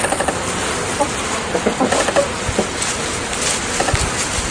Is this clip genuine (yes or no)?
yes